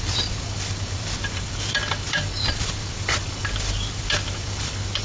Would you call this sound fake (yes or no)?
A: yes